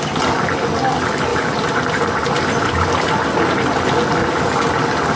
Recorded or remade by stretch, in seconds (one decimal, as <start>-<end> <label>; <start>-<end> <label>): 0.0-1.3 recorded; 1.3-2.9 remade; 2.9-5.2 recorded